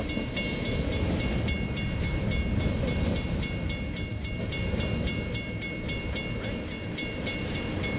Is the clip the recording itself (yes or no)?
yes